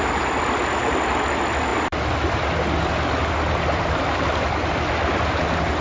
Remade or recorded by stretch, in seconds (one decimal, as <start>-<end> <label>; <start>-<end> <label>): 0.0-5.8 recorded